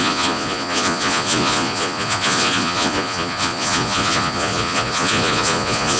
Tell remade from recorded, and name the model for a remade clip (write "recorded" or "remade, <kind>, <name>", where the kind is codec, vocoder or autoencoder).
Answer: remade, vocoder, Vocos